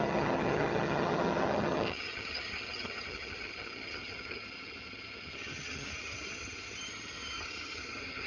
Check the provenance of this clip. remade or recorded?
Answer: remade